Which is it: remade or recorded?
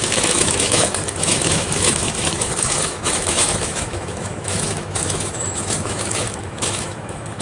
remade